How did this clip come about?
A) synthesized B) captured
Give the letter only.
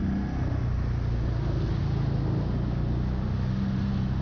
B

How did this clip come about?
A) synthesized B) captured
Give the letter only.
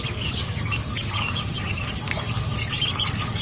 A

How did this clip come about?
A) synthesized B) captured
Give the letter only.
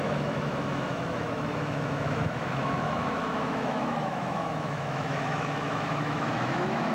A